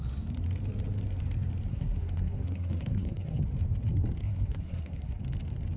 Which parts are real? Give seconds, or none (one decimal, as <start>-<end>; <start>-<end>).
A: 0.0-1.7; 3.4-4.2; 5.2-5.8